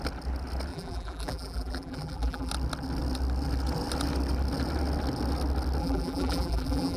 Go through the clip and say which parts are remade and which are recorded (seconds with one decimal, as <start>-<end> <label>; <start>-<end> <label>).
0.0-0.7 recorded; 0.7-2.5 remade; 2.5-5.8 recorded; 5.8-7.0 remade